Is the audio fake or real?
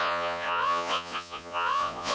fake